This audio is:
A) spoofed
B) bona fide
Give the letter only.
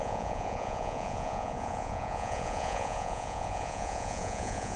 A